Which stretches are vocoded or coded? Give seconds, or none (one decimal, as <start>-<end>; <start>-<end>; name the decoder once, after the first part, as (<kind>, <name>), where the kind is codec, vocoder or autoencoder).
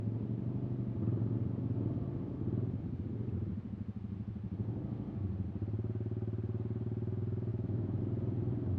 7.5-8.0 (autoencoder, DAC-VAE)